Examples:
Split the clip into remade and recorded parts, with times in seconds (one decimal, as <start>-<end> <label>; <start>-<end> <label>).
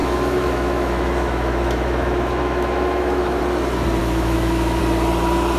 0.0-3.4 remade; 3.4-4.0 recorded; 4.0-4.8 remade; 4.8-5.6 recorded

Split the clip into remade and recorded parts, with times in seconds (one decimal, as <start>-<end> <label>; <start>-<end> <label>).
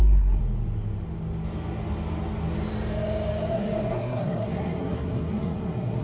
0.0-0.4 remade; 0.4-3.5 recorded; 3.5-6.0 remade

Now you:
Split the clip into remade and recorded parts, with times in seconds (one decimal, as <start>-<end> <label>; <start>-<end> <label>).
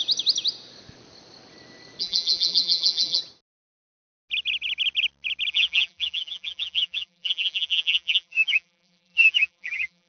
0.0-2.0 recorded; 2.0-3.2 remade; 3.2-5.5 recorded; 5.5-10.1 remade